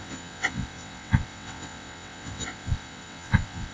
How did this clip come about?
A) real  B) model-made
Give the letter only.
B